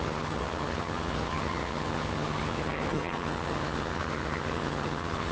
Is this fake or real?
fake